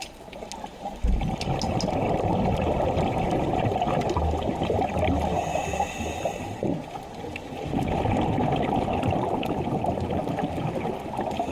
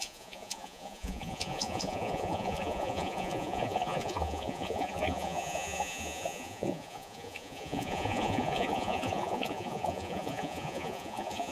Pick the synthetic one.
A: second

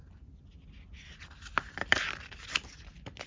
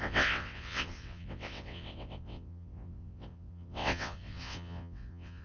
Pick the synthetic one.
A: second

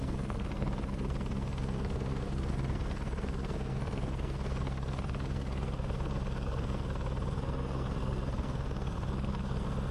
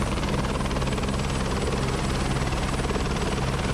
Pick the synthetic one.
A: first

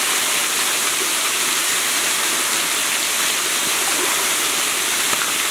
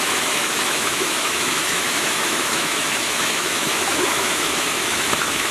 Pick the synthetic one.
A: second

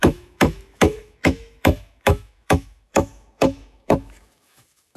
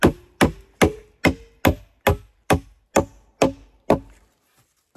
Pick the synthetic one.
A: first